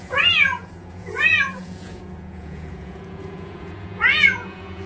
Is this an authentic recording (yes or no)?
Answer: no